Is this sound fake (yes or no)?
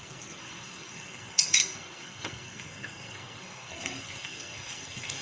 yes